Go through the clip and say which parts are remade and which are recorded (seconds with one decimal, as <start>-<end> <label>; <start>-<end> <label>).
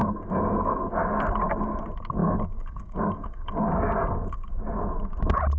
0.0-0.8 remade; 0.8-2.2 recorded; 2.2-4.5 remade; 4.5-5.6 recorded